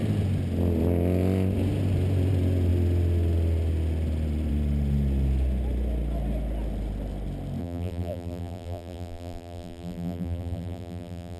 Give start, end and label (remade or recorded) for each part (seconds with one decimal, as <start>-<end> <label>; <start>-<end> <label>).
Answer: 0.0-7.6 recorded; 7.6-11.4 remade